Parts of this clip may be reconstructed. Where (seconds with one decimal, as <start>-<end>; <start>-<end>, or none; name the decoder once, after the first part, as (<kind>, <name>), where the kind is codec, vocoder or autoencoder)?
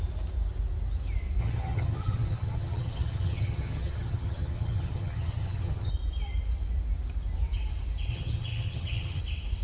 1.4-5.9 (vocoder, HiFi-GAN); 8.1-9.2